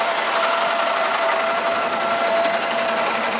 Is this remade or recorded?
recorded